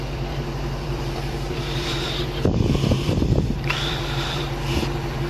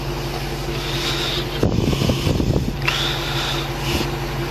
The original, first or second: second